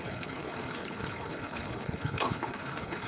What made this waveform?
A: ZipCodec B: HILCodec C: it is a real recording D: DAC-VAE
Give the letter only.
B